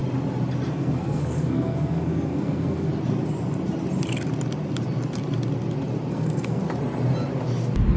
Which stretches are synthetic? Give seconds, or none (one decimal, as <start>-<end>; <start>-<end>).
0.7-2.9; 6.1-6.6